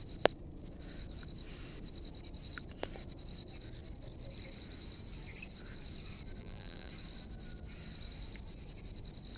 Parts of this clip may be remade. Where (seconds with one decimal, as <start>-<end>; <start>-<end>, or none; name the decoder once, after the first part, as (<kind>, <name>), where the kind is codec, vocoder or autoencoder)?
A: 6.4-6.9 (vocoder, BigVGAN v2)